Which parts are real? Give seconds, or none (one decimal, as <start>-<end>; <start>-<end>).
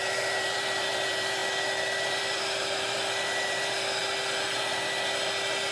1.4-2.1; 4.0-5.7